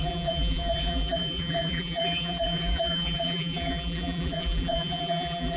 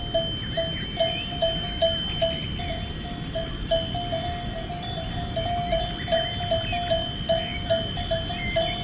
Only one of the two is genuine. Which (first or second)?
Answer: second